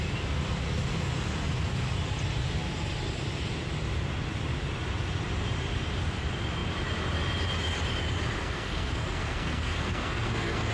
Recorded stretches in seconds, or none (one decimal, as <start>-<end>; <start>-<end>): 0.0-8.4